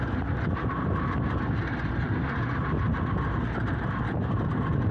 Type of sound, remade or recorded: recorded